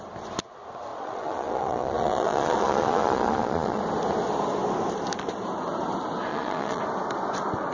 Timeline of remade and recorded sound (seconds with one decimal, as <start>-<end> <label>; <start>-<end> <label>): 0.0-0.9 recorded; 0.9-3.8 remade; 3.8-6.3 recorded; 6.3-6.8 remade; 6.8-7.7 recorded